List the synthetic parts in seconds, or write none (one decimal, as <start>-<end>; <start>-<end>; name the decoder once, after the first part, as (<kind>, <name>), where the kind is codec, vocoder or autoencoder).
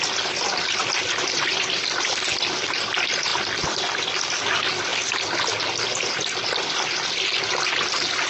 none